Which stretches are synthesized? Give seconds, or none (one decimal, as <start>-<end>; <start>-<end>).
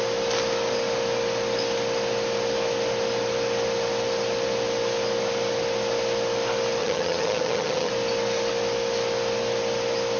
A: 6.8-7.9